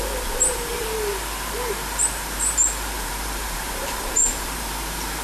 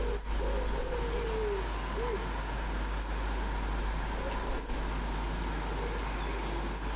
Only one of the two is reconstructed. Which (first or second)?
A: first